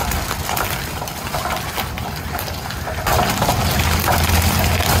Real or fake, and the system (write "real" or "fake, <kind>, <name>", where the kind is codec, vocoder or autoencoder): real